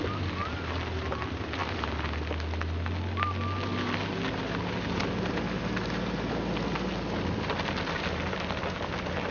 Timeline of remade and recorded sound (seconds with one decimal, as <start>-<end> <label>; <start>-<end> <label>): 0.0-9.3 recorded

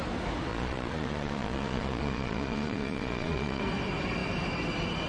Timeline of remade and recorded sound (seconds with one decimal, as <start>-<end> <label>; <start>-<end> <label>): 0.0-0.5 recorded; 0.5-3.6 remade; 3.6-5.1 recorded

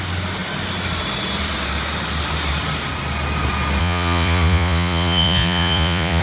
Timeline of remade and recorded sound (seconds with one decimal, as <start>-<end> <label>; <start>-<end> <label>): 0.0-3.8 recorded; 3.8-6.2 remade

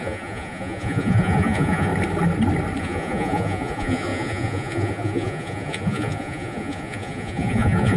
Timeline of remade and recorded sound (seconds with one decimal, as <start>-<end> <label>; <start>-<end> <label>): 0.0-1.9 remade; 1.9-2.8 recorded; 2.8-8.0 remade